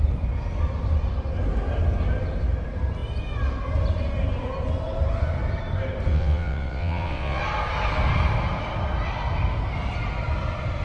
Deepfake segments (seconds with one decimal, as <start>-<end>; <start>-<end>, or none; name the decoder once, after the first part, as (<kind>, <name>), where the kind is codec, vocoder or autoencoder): 6.1-7.4 (vocoder, WaveNeXt)